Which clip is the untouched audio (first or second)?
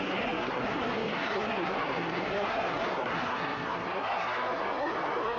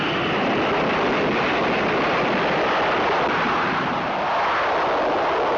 second